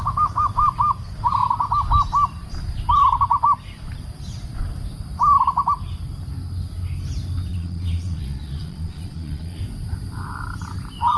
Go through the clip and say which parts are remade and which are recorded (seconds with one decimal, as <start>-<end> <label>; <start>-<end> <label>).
0.0-7.5 recorded; 7.5-9.6 remade; 9.6-11.2 recorded